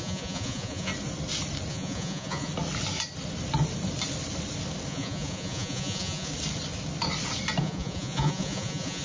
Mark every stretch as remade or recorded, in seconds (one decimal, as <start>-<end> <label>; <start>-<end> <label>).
0.0-0.9 remade; 0.9-1.7 recorded; 1.7-2.5 remade; 2.5-4.9 recorded; 4.9-6.3 remade; 6.3-7.6 recorded; 7.6-9.0 remade